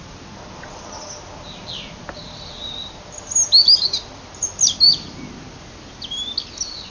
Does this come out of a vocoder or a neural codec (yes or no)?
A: no